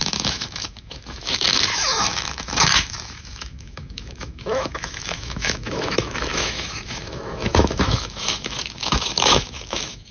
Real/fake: fake